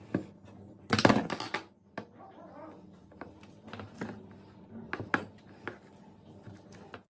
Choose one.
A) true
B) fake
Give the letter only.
A